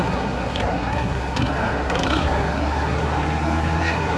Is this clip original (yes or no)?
no